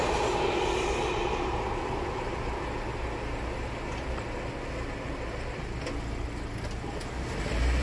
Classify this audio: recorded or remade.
recorded